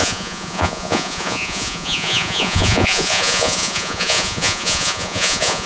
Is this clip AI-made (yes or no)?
yes